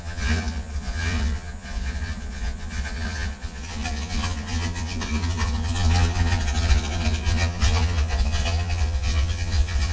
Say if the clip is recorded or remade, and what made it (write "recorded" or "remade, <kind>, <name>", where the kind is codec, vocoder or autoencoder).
remade, vocoder, Vocos